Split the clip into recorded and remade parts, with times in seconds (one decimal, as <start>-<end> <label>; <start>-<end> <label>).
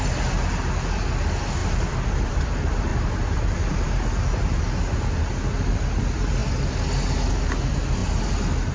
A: 0.0-1.6 recorded; 1.6-2.5 remade; 2.5-2.9 recorded; 2.9-4.2 remade; 4.2-8.7 recorded